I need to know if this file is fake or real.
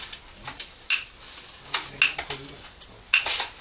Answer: real